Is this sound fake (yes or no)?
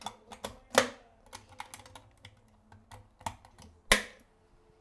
no